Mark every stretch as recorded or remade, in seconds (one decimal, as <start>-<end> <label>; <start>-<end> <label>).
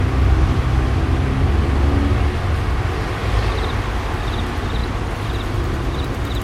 0.0-6.4 recorded